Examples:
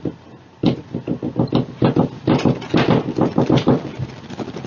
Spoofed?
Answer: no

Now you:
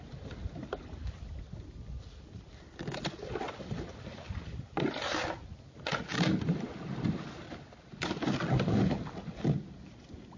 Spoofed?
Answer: no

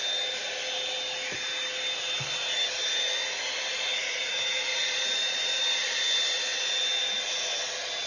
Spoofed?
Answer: no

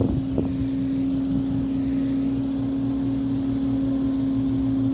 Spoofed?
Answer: no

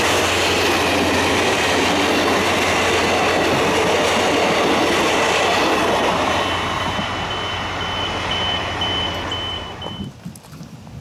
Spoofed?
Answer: no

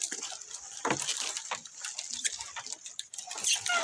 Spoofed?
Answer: no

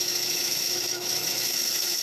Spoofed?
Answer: yes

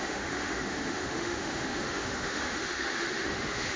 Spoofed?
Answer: yes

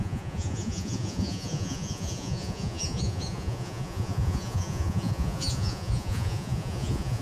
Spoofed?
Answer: yes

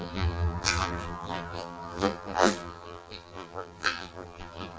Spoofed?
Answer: yes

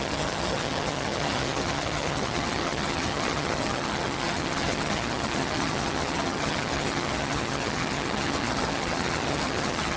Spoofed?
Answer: yes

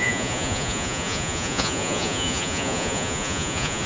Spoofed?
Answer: yes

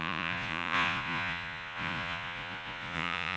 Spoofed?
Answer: yes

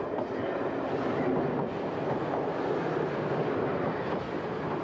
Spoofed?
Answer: no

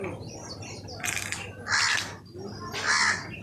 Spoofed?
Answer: no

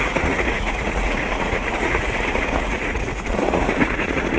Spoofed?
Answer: yes